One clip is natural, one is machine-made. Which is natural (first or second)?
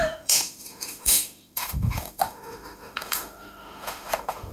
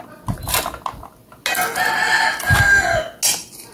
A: second